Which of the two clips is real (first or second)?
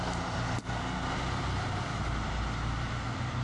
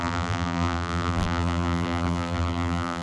first